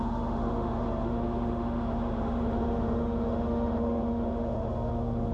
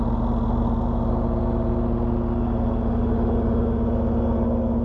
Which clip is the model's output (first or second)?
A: first